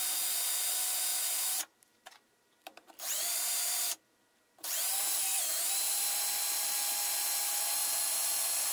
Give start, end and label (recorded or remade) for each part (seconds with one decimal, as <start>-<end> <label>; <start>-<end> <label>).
0.0-1.1 recorded; 1.1-6.2 remade; 6.2-8.7 recorded